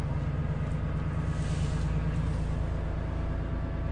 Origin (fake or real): real